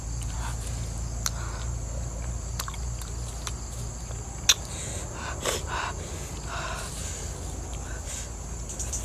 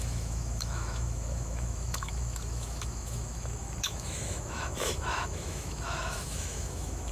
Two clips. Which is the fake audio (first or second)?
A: second